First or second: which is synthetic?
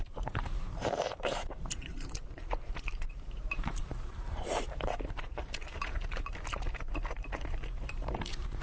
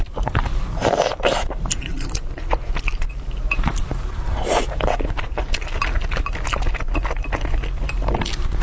first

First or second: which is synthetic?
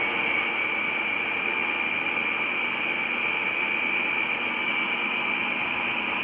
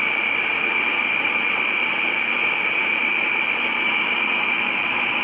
second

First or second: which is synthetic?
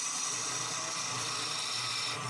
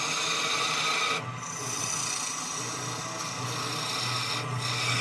first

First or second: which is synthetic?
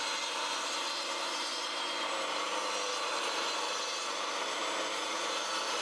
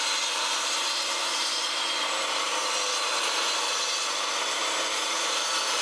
second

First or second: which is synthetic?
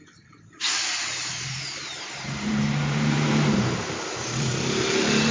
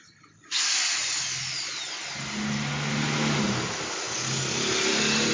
first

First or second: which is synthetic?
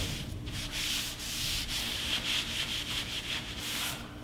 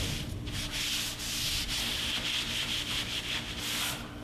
first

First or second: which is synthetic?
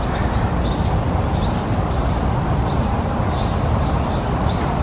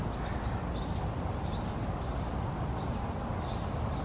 first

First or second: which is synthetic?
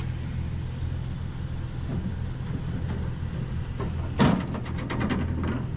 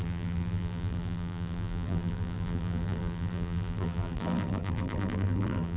second